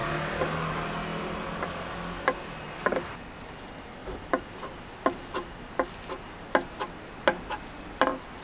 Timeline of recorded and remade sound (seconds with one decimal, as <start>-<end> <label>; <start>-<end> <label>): 0.0-8.4 recorded